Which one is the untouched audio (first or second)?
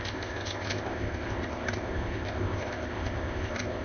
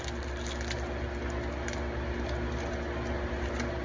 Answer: second